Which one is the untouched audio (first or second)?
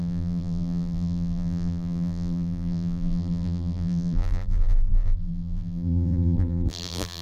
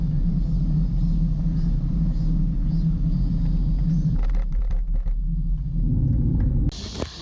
second